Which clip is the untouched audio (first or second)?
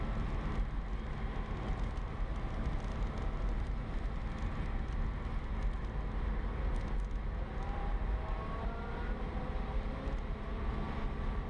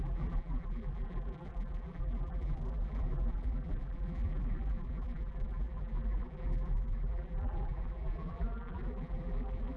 first